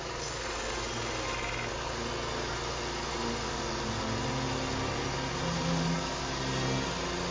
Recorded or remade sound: recorded